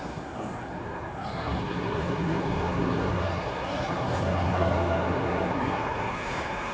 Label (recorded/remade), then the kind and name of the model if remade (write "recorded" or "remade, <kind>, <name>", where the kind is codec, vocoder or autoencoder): remade, codec, SNAC